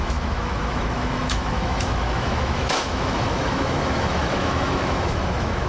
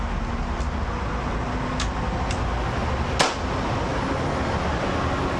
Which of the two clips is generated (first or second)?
first